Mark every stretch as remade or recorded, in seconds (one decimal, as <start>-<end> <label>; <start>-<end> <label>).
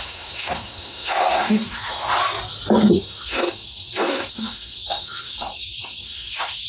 0.0-2.2 remade; 2.2-2.9 recorded; 2.9-6.7 remade